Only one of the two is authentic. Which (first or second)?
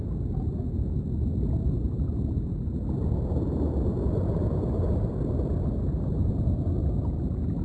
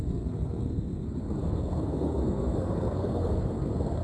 first